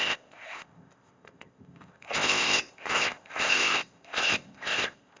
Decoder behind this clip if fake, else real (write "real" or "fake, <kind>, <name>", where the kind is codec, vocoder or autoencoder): fake, codec, ZipCodec